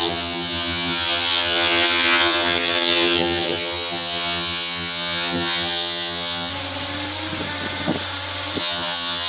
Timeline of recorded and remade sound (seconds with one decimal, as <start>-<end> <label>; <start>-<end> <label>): 0.0-6.5 remade; 6.5-8.6 recorded; 8.6-9.3 remade